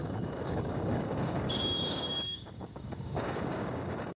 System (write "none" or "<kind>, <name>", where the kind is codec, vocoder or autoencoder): codec, DAC